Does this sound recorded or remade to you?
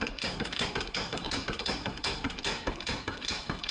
remade